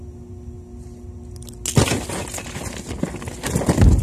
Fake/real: real